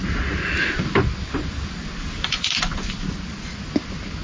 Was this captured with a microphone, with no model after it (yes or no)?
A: yes